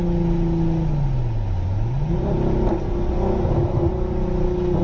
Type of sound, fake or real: real